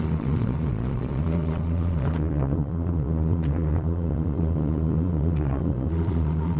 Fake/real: fake